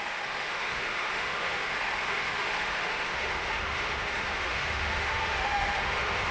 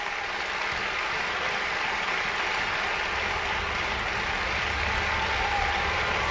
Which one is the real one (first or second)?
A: second